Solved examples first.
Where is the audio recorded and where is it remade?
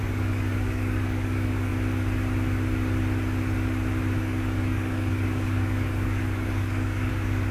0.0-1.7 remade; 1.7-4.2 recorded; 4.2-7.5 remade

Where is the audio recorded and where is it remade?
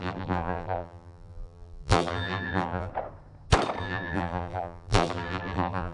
0.0-2.9 remade; 2.9-3.8 recorded; 3.8-5.9 remade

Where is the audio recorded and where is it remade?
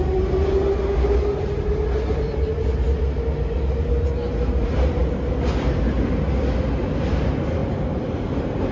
0.0-7.6 recorded; 7.6-8.7 remade